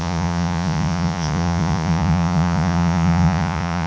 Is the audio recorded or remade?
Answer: remade